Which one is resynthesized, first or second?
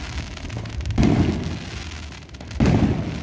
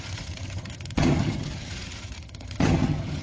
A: second